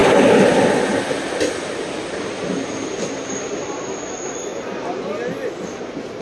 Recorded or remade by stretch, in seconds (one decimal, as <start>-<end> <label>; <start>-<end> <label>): 0.0-6.2 recorded